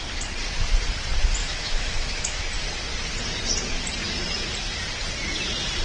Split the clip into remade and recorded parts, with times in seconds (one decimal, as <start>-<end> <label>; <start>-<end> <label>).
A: 0.0-1.4 recorded; 1.4-2.4 remade; 2.4-5.8 recorded